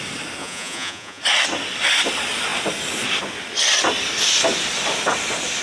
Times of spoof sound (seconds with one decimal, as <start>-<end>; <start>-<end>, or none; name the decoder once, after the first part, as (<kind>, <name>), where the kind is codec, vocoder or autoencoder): 0.4-1.2 (vocoder, Vocos)